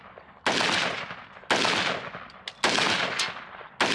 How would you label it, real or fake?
real